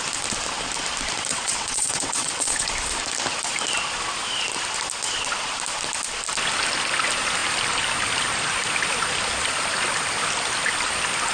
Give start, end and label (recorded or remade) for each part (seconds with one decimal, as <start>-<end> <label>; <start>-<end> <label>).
0.0-1.3 recorded; 1.3-2.7 remade; 2.7-11.3 recorded